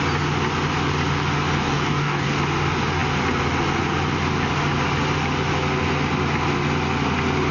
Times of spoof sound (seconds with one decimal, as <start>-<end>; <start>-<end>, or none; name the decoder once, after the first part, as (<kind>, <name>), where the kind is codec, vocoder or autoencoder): 1.6-2.4 (codec, DAC)